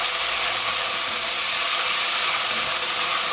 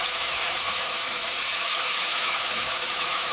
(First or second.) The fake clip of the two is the second